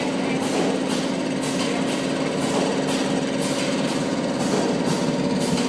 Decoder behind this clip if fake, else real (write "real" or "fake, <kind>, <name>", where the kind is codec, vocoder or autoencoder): real